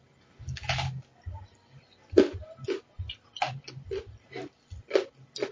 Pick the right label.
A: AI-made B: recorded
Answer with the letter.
B